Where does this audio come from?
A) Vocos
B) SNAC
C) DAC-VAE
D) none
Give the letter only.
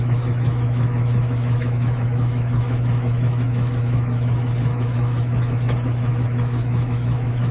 C